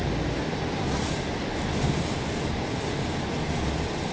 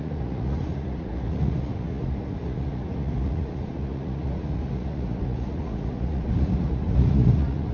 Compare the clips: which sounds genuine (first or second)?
first